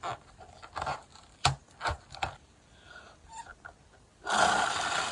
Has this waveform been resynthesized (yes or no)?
no